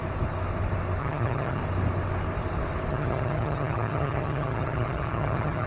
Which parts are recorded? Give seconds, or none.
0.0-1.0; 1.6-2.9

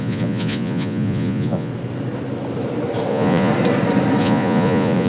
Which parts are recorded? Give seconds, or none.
1.7-3.1; 3.5-4.2

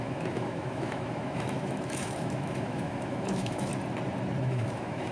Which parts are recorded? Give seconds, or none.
3.7-4.4